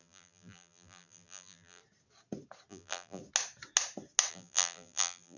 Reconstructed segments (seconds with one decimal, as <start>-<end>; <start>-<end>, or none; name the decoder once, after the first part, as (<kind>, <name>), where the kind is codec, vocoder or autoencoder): 0.0-1.8 (vocoder, BigVGAN v2); 2.7-3.2; 4.3-5.4